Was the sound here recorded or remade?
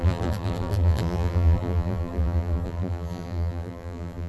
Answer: remade